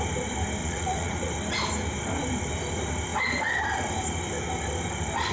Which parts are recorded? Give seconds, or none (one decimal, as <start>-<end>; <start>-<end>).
0.0-0.6; 1.3-5.3